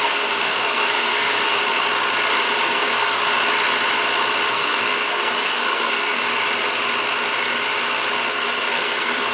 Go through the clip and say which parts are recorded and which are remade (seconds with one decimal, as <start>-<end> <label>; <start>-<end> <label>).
0.0-1.6 remade; 1.6-2.6 recorded; 2.6-3.2 remade; 3.2-4.5 recorded; 4.5-6.2 remade; 6.2-8.3 recorded; 8.3-9.3 remade